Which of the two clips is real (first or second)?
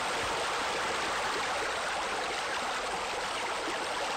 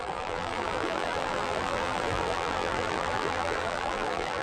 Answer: first